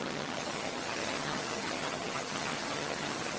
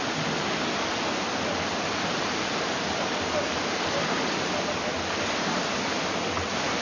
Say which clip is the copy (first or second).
first